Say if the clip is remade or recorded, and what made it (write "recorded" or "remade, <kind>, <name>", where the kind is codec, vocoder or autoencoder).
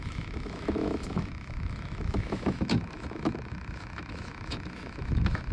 remade, autoencoder, DAC-VAE